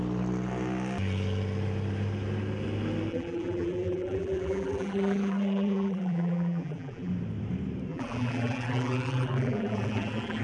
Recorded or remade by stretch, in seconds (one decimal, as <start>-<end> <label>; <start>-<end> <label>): 0.0-3.1 recorded; 3.1-7.1 remade; 7.1-7.9 recorded; 7.9-10.4 remade